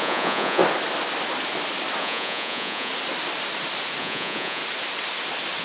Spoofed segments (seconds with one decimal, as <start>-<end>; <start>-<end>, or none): 0.0-0.6; 2.0-2.9; 4.0-4.6

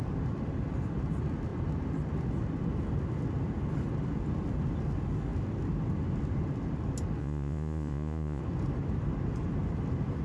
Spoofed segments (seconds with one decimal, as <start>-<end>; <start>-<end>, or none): 7.2-8.4

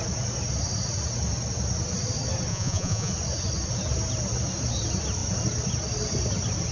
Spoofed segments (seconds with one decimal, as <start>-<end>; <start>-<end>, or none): 2.5-3.1

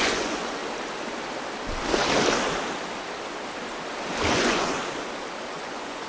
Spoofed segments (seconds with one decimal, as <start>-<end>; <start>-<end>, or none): 0.0-0.6; 4.3-4.8; 5.5-6.1

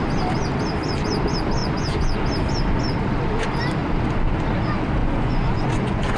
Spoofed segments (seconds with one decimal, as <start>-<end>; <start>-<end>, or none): 1.6-2.2; 5.0-6.2

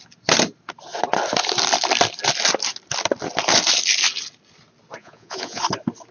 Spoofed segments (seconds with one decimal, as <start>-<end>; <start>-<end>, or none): 5.0-5.6

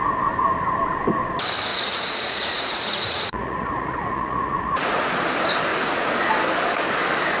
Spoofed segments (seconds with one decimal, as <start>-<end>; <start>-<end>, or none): 1.7-5.3; 5.7-6.2

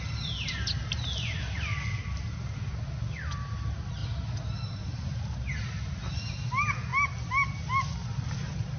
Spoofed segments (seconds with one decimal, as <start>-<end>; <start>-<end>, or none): none